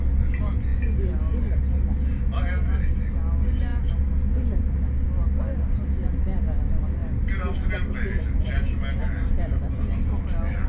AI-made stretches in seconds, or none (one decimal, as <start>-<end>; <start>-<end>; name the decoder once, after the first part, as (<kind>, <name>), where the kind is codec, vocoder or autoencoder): none